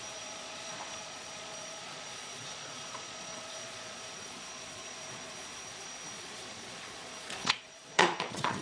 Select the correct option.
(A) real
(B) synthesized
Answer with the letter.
B